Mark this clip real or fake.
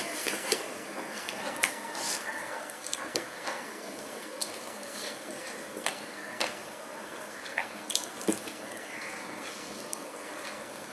fake